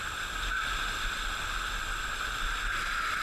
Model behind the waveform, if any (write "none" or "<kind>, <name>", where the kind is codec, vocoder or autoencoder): none